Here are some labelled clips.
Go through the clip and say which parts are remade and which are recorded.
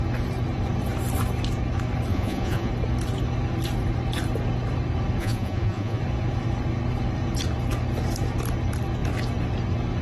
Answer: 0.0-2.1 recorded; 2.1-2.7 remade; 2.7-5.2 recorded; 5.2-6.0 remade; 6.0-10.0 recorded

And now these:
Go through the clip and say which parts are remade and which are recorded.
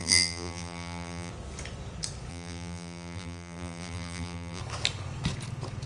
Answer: 0.0-1.3 remade; 1.3-2.3 recorded; 2.3-4.6 remade; 4.6-5.9 recorded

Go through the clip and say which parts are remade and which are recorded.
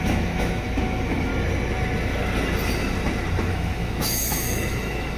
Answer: 0.0-1.3 remade; 1.3-3.5 recorded; 3.5-5.2 remade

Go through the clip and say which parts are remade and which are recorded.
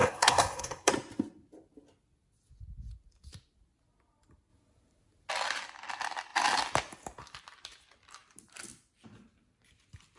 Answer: 0.0-0.9 remade; 0.9-10.2 recorded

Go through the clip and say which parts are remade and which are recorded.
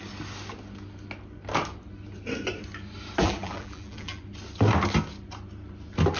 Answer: 0.0-3.2 recorded; 3.2-4.2 remade; 4.2-6.2 recorded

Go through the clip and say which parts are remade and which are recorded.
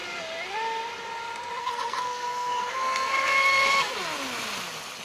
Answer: 0.0-1.6 recorded; 1.6-3.9 remade; 3.9-5.0 recorded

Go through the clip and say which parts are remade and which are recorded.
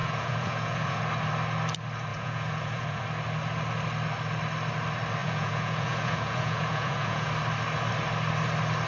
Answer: 0.0-1.0 remade; 1.0-2.1 recorded; 2.1-3.0 remade; 3.0-5.2 recorded; 5.2-7.3 remade; 7.3-8.9 recorded